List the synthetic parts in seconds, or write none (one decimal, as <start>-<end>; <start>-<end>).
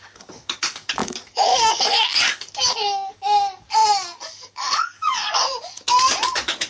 0.0-6.7